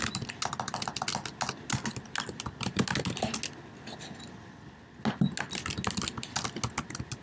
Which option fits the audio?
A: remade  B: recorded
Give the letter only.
B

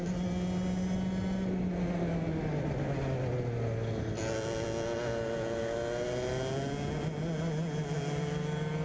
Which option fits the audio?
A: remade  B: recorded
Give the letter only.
B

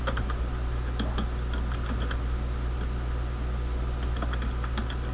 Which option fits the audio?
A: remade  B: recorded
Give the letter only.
B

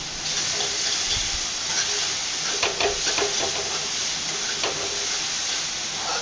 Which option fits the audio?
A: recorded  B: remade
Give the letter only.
A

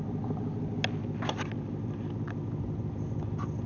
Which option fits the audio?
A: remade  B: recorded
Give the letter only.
B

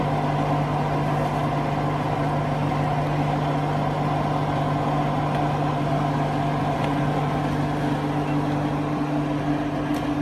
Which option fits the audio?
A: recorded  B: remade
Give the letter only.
A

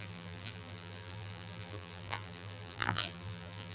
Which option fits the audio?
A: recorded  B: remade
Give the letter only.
B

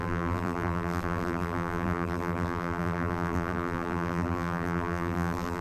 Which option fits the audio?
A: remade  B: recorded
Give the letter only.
A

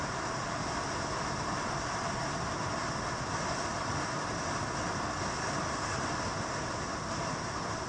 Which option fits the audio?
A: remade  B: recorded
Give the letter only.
B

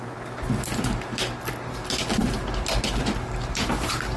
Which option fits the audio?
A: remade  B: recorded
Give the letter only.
B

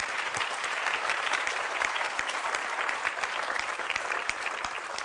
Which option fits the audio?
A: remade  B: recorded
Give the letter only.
A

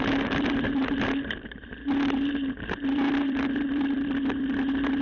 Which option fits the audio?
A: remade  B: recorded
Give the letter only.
A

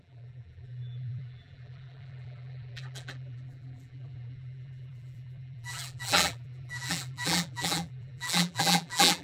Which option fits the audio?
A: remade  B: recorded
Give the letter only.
A